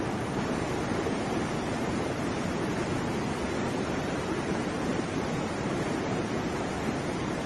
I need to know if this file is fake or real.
fake